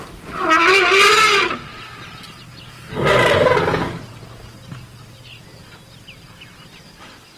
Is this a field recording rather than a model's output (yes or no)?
yes